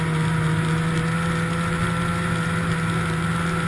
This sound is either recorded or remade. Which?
recorded